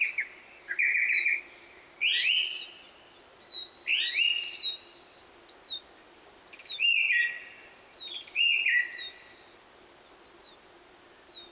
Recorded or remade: recorded